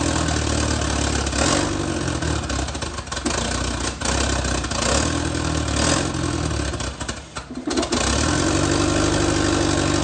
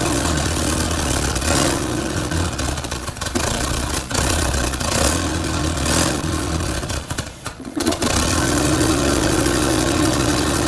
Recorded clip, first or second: first